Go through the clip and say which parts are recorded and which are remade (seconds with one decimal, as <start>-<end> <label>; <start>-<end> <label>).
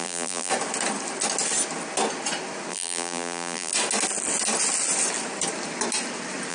0.0-0.5 remade; 0.5-2.7 recorded; 2.7-3.7 remade; 3.7-6.5 recorded